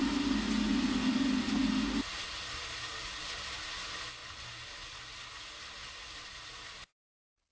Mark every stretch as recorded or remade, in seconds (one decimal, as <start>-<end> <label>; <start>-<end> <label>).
0.0-4.2 recorded; 4.2-5.2 remade; 5.2-5.8 recorded; 5.8-6.3 remade; 6.3-7.5 recorded